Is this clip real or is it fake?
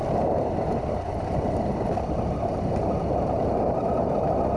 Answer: real